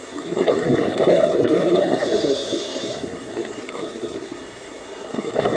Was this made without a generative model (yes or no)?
no